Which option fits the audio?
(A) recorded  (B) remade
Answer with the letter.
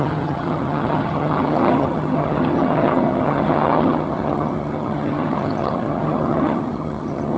B